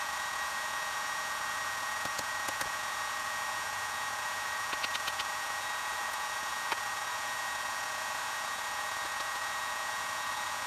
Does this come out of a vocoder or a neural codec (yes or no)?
yes